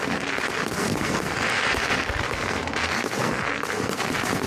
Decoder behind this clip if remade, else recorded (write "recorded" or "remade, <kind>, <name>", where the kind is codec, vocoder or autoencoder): remade, codec, SNAC